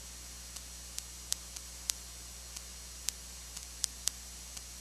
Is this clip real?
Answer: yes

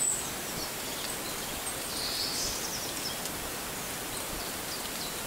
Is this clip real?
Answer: yes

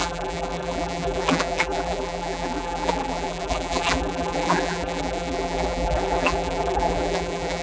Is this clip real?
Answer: no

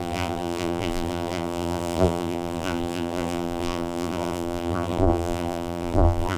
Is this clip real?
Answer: no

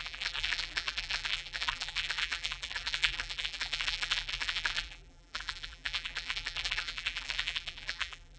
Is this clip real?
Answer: no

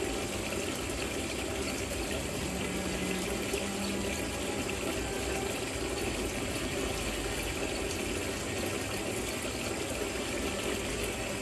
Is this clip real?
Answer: yes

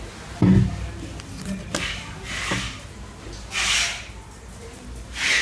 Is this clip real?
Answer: yes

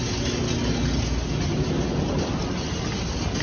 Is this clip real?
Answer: yes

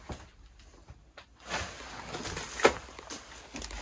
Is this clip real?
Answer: yes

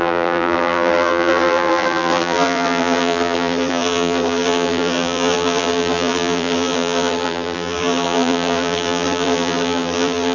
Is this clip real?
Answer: no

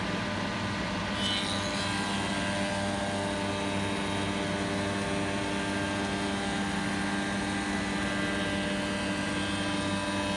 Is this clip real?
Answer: yes